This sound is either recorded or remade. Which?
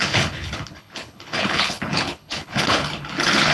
remade